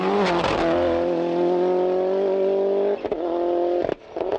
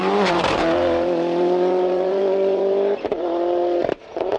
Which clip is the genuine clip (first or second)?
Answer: first